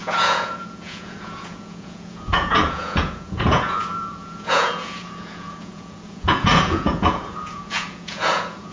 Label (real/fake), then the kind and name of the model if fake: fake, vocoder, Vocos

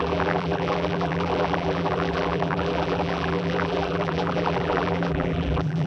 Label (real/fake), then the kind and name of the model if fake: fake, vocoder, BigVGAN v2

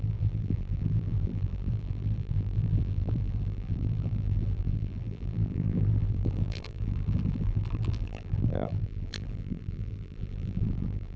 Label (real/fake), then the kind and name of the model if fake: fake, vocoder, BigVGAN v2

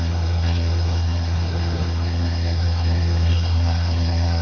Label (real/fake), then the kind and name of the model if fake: fake, codec, SNAC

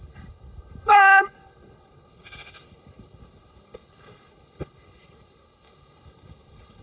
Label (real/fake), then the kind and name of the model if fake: fake, codec, HILCodec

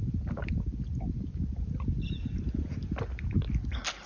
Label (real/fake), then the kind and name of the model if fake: real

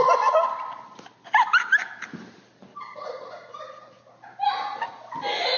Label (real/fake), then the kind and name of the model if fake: real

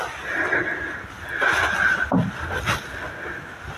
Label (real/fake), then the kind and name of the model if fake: real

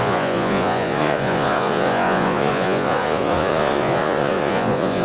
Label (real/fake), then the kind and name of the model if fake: fake, vocoder, Vocos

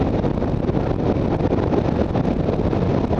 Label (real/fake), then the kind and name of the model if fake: real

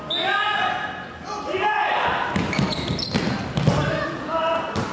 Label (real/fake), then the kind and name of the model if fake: real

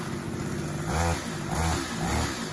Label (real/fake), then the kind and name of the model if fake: real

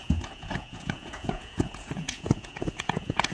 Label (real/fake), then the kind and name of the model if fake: fake, vocoder, Vocos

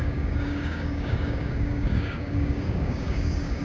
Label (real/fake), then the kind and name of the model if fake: fake, codec, DAC